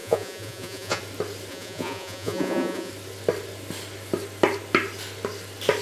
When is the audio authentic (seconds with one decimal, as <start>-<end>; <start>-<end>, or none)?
1.0-1.5; 2.9-5.8